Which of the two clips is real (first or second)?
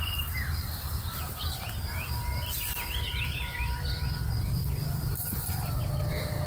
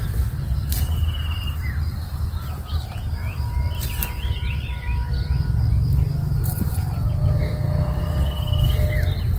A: second